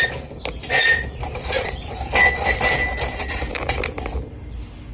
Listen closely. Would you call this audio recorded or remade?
recorded